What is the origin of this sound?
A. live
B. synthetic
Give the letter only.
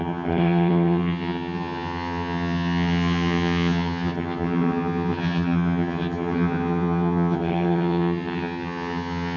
B